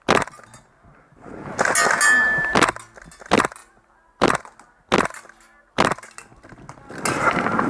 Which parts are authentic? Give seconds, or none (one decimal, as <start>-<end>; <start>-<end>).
0.0-7.7